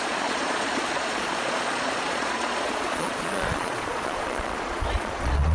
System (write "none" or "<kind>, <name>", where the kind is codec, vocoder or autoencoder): vocoder, Vocos